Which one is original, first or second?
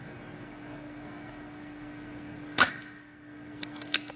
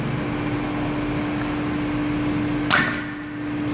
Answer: second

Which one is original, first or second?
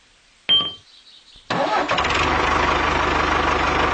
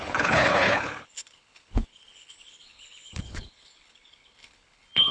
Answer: first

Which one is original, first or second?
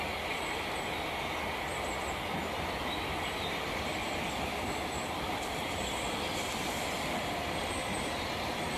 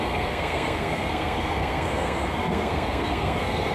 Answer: first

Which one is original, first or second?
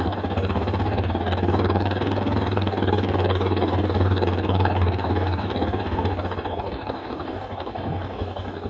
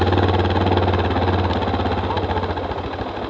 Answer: second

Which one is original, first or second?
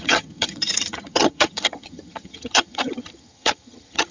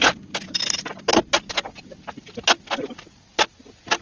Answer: second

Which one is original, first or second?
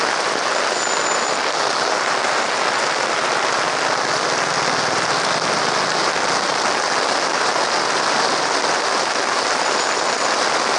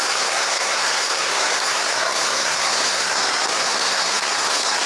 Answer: first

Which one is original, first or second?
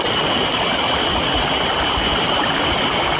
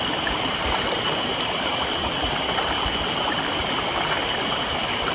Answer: first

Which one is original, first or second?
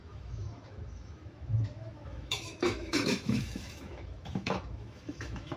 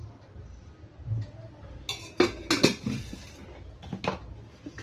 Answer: second